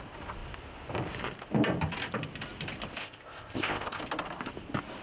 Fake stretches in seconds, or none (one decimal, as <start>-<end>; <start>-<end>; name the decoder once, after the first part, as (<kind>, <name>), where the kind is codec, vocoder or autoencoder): 3.0-4.0 (codec, ZipCodec)

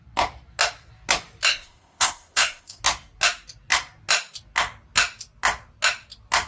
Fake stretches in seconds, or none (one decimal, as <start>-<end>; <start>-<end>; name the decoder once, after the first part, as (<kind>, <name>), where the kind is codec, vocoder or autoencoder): 1.5-2.8 (codec, ZipCodec)

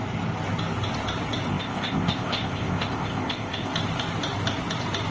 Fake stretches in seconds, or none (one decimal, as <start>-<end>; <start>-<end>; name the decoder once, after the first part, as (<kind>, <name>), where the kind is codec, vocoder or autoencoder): 1.5-3.7 (codec, ZipCodec)

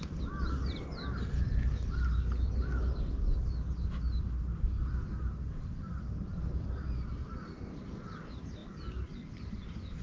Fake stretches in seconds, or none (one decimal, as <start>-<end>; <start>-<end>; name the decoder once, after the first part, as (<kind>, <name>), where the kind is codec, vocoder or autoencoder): none

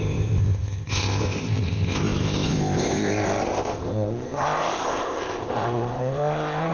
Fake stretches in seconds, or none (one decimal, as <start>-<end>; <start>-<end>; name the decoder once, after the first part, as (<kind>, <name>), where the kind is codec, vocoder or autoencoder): 0.0-6.7 (codec, ZipCodec)

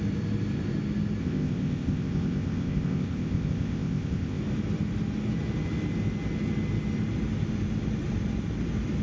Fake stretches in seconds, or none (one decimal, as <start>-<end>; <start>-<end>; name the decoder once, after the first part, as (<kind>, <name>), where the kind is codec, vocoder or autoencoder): 1.2-4.4 (codec, ZipCodec)

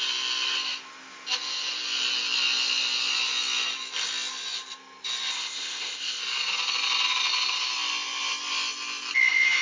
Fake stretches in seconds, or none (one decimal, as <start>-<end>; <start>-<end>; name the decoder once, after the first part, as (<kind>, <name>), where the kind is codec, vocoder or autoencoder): 5.3-6.2 (codec, ZipCodec)